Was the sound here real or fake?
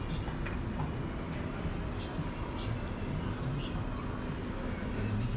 real